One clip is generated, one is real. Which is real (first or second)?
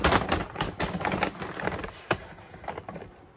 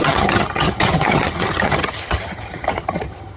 first